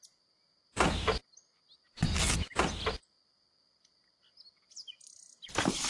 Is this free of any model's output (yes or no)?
yes